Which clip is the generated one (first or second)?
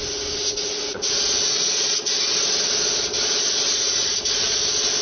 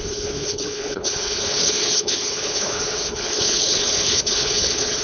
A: second